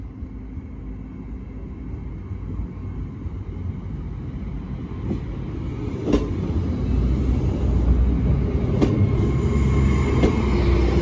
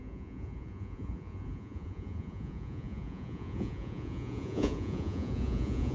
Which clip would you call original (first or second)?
first